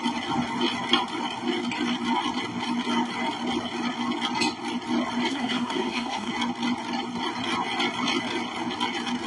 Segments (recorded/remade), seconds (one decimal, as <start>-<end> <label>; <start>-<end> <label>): 0.0-5.3 recorded; 5.3-6.3 remade; 6.3-9.3 recorded